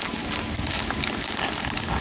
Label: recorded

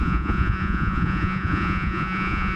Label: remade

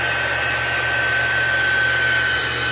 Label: recorded